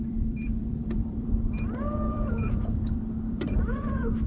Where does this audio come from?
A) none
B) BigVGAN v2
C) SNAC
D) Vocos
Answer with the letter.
B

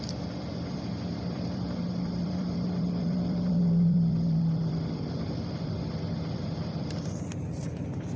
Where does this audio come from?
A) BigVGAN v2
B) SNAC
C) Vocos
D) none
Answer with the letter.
A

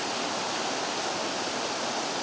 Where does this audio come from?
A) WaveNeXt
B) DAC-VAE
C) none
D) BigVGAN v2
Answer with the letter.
C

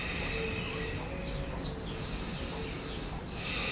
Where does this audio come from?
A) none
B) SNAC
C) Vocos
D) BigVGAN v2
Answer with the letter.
A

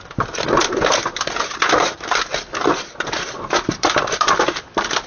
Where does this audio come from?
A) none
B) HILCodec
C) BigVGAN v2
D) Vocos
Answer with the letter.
C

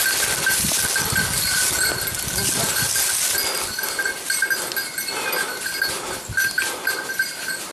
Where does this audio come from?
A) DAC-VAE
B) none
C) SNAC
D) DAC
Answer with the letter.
B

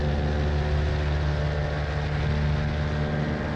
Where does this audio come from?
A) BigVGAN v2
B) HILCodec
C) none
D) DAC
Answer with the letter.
C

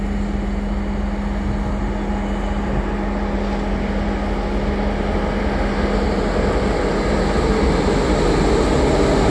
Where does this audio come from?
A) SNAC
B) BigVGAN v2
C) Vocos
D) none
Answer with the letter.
D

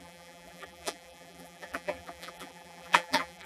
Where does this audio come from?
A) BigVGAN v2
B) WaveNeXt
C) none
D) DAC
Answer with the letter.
A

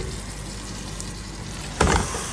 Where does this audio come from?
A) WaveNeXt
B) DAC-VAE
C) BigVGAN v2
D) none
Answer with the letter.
D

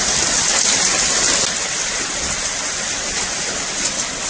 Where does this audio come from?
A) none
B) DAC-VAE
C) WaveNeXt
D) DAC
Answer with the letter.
A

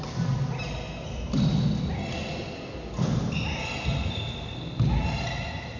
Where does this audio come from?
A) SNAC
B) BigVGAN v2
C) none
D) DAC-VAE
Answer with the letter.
C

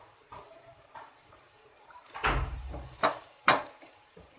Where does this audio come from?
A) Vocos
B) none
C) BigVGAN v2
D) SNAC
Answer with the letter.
C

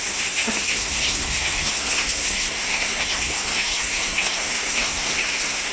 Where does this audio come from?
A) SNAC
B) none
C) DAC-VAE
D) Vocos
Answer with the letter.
A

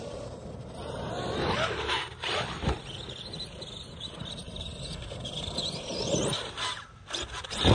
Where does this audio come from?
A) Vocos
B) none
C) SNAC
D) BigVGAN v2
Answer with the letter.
B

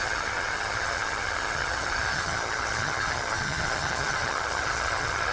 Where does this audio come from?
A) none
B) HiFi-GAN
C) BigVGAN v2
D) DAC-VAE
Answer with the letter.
B